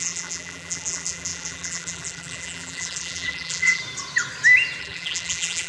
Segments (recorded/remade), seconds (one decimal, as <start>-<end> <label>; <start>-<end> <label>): 0.0-3.8 remade; 3.8-4.8 recorded; 4.8-5.7 remade